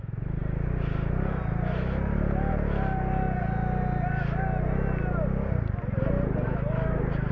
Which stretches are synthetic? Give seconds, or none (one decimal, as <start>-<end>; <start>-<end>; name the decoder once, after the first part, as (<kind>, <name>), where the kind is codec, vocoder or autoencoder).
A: none